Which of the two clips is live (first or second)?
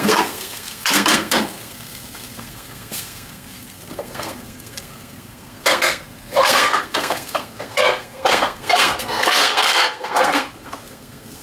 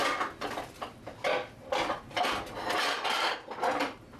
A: second